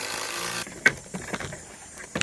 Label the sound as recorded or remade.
remade